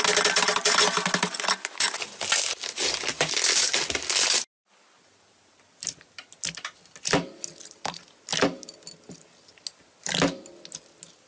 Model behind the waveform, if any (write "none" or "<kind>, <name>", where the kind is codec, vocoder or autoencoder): none